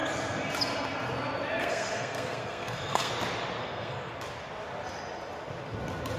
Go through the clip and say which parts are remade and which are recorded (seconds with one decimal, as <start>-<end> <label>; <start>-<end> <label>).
0.0-1.6 recorded; 1.6-3.1 remade; 3.1-3.6 recorded; 3.6-4.1 remade; 4.1-6.2 recorded